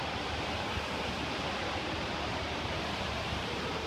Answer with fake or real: fake